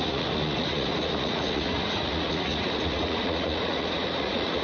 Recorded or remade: remade